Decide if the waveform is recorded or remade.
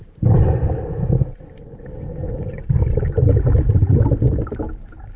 recorded